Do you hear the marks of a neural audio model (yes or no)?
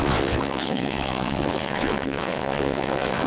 yes